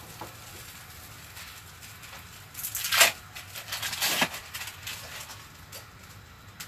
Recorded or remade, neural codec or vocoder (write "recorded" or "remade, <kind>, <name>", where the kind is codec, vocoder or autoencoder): recorded